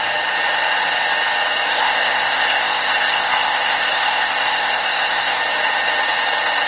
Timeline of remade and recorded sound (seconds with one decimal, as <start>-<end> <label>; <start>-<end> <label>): 0.0-1.7 recorded; 1.7-5.4 remade; 5.4-6.7 recorded